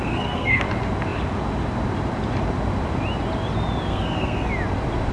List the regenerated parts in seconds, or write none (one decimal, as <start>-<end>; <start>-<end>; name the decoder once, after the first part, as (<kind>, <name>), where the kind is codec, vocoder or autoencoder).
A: 0.0-0.6 (codec, SNAC); 3.9-4.5